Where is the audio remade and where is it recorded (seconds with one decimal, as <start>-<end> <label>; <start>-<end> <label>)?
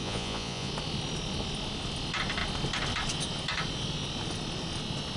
0.0-0.7 remade; 0.7-5.2 recorded